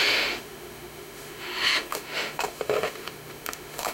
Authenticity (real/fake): fake